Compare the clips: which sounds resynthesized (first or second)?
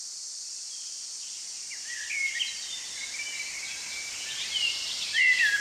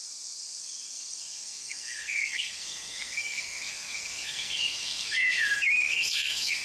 second